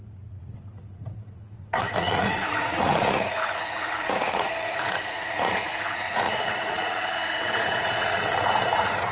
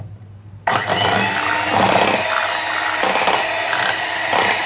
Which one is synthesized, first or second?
first